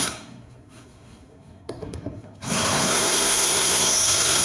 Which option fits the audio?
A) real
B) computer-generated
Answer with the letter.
B